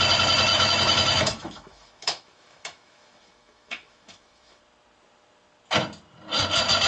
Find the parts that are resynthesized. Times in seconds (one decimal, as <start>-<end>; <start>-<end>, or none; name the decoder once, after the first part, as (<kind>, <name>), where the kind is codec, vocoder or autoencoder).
0.5-4.6 (autoencoder, DAC-VAE)